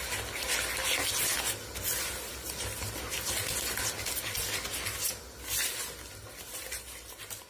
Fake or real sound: real